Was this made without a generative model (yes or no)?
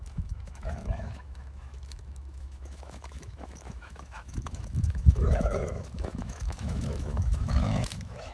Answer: no